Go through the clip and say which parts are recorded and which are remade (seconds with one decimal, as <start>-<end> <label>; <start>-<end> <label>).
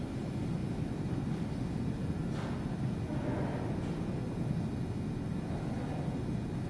0.0-6.7 recorded